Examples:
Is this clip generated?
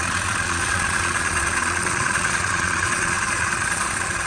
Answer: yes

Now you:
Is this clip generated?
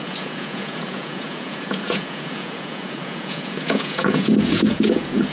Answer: yes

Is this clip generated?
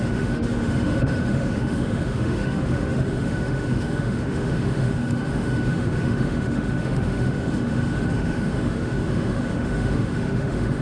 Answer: yes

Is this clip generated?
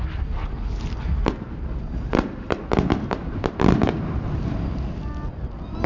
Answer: no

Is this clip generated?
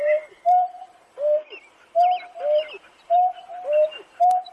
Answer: no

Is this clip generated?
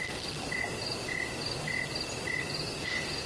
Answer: no